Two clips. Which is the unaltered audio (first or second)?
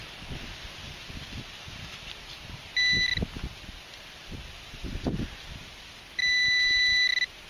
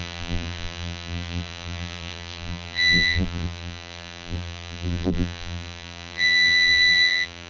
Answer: first